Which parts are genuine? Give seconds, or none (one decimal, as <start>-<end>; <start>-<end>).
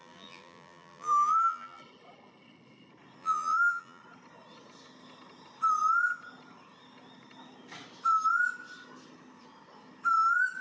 1.8-3.2; 4.0-10.6